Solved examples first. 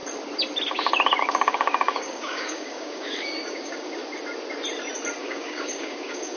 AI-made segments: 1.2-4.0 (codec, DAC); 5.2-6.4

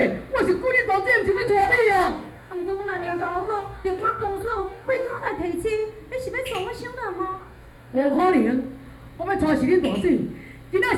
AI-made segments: 1.3-5.3 (codec, DAC); 7.4-8.3

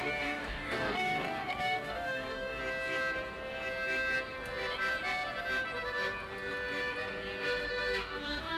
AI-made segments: 0.0-2.6 (codec, DAC); 7.7-8.6

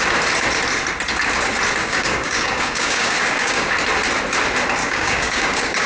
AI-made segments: 1.8-3.7 (codec, DAC); 4.8-5.9